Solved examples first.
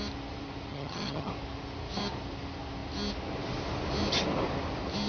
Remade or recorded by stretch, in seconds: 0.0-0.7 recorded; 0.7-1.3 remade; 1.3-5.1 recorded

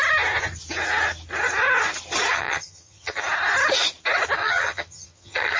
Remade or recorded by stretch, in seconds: 0.0-2.3 recorded; 2.3-3.2 remade; 3.2-4.4 recorded; 4.4-5.6 remade

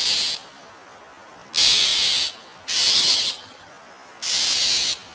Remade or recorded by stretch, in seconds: 0.0-3.0 recorded; 3.0-3.7 remade; 3.7-5.1 recorded

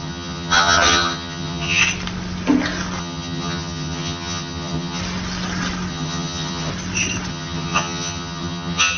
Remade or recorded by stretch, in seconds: 0.0-1.8 remade; 1.8-3.0 recorded; 3.0-5.0 remade; 5.0-5.9 recorded; 5.9-6.7 remade; 6.7-7.3 recorded; 7.3-9.0 remade

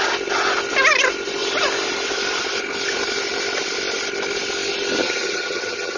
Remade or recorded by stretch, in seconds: 0.0-5.0 recorded; 5.0-6.0 remade